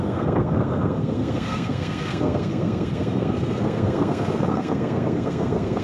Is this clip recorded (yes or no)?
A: no